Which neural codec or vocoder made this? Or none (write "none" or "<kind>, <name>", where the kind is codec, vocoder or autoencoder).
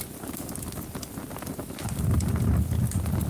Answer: none